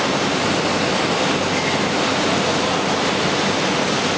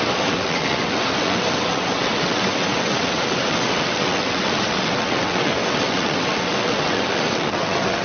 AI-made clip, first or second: second